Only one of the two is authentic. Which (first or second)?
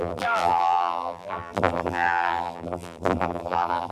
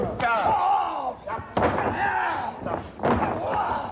second